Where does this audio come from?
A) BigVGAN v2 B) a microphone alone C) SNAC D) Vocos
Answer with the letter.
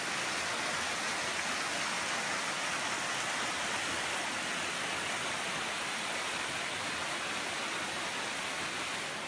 B